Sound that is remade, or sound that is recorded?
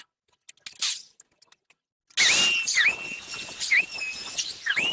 recorded